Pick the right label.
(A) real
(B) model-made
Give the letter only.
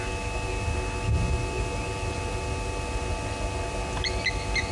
A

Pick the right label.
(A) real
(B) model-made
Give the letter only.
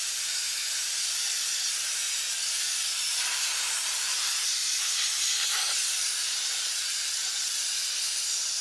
B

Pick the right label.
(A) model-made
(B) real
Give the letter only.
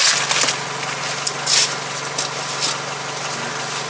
B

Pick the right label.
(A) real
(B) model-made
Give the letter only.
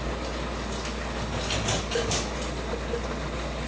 A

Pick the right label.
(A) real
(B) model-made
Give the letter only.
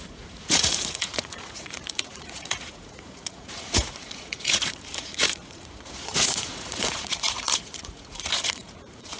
B